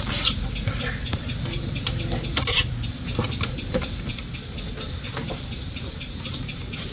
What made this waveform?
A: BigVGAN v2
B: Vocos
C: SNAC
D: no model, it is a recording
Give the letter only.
A